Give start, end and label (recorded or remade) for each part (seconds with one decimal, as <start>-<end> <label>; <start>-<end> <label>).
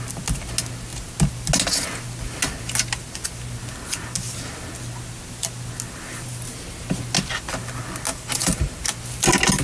0.0-8.1 recorded; 8.1-8.8 remade; 8.8-9.6 recorded